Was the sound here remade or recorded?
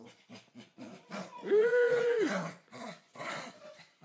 remade